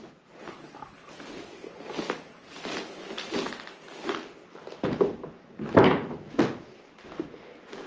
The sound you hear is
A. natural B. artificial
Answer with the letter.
A